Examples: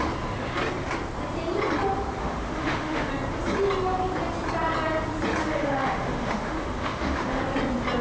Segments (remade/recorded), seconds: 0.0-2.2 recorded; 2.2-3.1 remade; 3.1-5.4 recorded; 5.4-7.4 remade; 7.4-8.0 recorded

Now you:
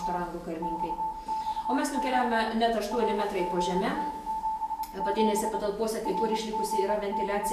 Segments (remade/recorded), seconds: 0.0-1.5 recorded; 1.5-4.4 remade; 4.4-7.5 recorded

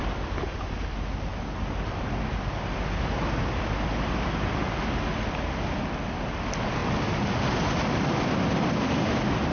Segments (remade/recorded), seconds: 0.0-9.5 recorded

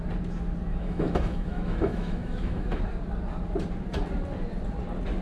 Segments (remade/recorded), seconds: 0.0-0.7 recorded; 0.7-2.8 remade; 2.8-5.2 recorded